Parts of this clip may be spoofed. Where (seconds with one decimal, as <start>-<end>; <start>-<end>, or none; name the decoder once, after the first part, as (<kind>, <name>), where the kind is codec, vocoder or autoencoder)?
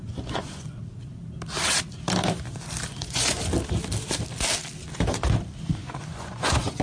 0.0-0.8 (vocoder, Vocos); 2.9-3.4; 5.8-6.8